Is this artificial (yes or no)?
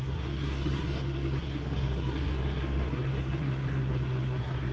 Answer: yes